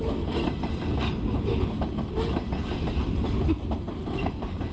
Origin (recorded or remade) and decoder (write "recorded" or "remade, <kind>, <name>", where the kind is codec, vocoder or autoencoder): recorded